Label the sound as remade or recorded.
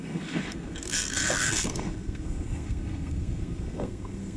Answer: remade